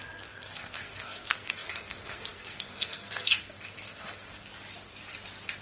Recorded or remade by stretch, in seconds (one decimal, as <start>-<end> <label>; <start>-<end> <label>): 0.0-4.5 remade; 4.5-5.6 recorded